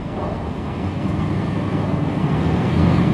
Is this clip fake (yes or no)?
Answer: yes